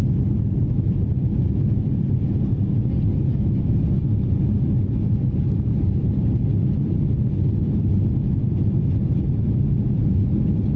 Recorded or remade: recorded